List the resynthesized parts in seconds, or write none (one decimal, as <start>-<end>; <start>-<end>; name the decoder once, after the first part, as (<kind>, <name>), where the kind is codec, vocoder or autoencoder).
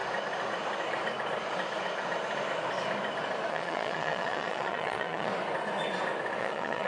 3.5-5.3 (vocoder, Vocos); 6.4-6.9